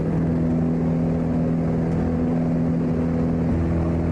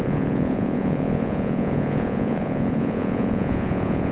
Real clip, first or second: first